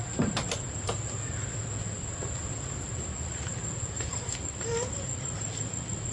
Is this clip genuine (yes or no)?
yes